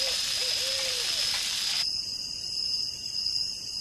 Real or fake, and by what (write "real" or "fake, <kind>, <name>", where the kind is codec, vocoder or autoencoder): real